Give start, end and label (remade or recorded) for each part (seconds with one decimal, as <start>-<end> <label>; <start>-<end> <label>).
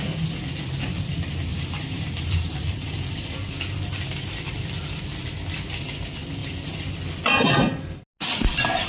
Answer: 0.0-1.5 recorded; 1.5-3.0 remade; 3.0-8.9 recorded